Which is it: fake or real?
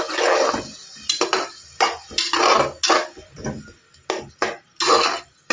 real